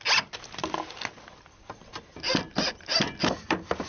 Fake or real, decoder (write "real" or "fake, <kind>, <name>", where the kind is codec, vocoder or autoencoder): real